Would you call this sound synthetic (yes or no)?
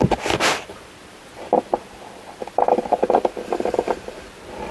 no